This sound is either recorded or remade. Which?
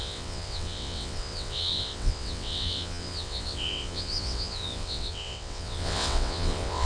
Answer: remade